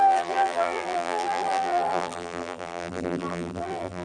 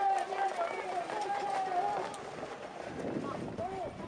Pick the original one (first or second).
second